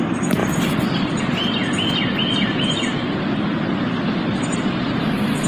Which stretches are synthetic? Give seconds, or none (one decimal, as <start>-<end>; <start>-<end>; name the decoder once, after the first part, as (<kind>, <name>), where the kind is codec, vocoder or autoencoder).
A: none